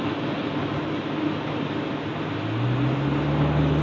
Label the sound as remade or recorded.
recorded